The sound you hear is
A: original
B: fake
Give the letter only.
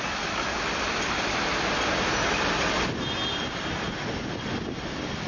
A